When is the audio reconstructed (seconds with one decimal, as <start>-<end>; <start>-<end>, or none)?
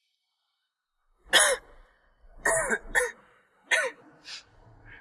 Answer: none